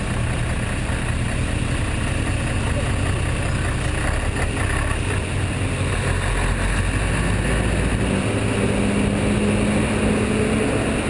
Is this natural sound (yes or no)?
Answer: yes